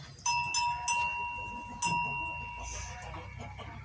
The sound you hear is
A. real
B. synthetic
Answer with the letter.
A